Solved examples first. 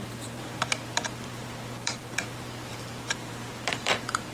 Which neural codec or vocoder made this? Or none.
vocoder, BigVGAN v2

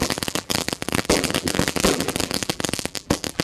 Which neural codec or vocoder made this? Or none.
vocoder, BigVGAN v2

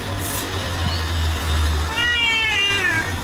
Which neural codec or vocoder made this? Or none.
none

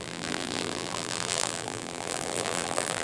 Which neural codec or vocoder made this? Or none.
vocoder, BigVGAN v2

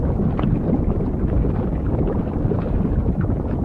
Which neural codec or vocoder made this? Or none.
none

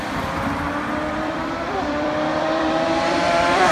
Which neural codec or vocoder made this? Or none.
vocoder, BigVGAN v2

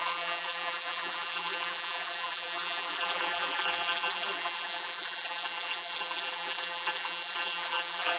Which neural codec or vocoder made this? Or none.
vocoder, BigVGAN v2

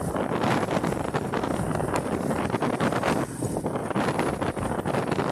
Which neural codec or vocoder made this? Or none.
none